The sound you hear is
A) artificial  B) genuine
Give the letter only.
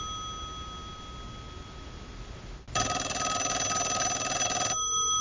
B